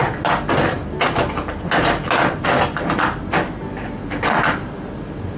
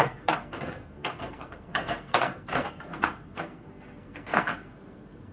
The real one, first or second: first